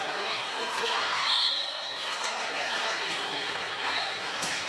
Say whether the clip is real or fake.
fake